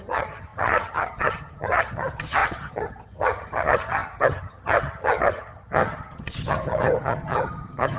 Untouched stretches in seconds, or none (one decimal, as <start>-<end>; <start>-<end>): none